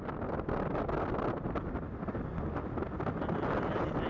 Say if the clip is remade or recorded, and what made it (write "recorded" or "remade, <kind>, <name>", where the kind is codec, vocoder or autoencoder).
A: recorded